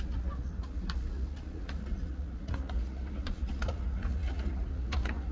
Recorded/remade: remade